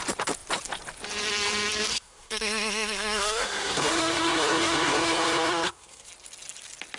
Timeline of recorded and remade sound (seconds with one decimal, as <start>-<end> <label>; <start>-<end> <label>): 0.0-1.9 recorded; 1.9-6.1 remade; 6.1-7.0 recorded

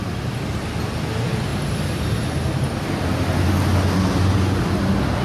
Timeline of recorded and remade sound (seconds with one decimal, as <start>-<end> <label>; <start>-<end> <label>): 0.0-5.2 recorded

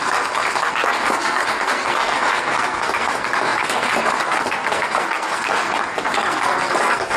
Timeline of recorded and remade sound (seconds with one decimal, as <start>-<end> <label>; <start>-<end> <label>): 0.0-7.2 remade

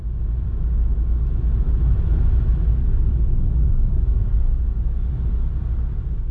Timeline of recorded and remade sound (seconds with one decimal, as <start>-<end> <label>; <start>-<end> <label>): 0.0-2.7 recorded; 2.7-5.1 remade; 5.1-6.3 recorded

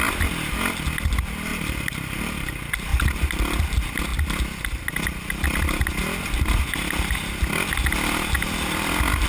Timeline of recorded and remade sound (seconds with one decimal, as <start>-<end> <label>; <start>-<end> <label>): 0.0-1.5 recorded; 1.5-2.5 remade; 2.5-2.9 recorded; 2.9-3.5 remade; 3.5-9.3 recorded